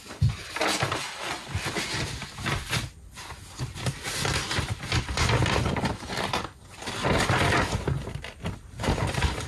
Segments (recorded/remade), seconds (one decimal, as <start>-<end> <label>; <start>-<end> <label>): 0.0-9.5 recorded